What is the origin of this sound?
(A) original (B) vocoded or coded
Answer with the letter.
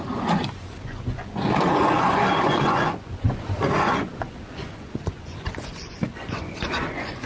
B